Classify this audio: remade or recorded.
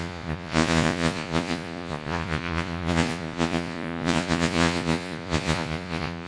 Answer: remade